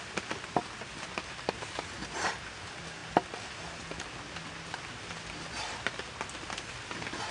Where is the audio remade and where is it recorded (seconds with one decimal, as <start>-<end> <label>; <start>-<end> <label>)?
0.0-7.3 recorded